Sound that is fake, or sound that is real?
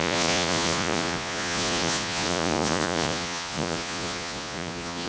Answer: fake